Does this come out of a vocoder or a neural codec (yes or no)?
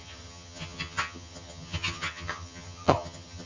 yes